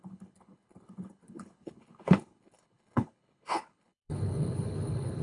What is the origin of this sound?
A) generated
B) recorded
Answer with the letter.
A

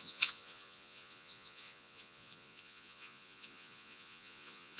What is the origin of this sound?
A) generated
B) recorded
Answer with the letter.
A